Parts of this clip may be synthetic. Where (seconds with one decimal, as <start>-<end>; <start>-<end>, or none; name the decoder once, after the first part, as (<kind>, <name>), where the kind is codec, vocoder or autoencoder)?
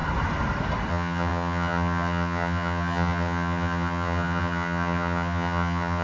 0.9-6.0 (vocoder, HiFi-GAN)